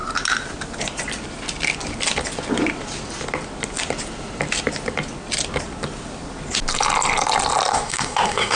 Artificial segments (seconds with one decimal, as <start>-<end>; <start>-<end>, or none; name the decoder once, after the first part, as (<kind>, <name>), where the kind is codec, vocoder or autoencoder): 7.7-8.6 (codec, SNAC)